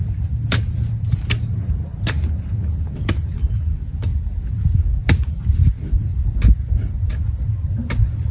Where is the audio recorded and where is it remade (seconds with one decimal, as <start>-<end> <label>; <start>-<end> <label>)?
0.0-8.3 recorded